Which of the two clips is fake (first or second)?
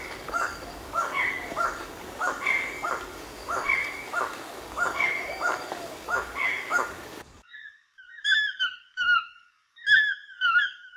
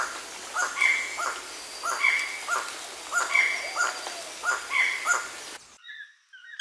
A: first